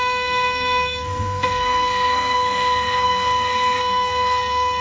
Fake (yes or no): yes